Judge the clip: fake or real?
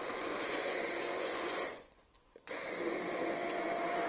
fake